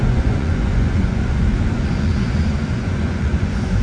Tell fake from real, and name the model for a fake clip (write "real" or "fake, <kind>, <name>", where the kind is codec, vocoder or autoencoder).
fake, vocoder, Vocos